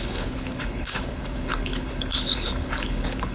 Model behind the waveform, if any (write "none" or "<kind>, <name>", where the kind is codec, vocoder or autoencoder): codec, HILCodec